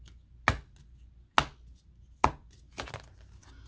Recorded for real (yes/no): yes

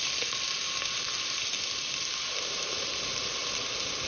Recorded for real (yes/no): yes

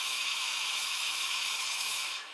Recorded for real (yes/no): no